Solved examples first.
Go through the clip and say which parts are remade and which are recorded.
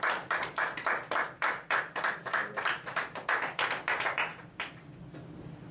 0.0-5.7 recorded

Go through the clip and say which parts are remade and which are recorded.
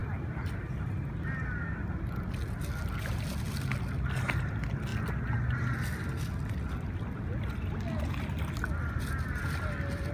0.0-10.1 recorded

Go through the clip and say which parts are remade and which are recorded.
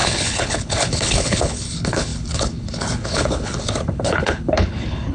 0.0-5.1 remade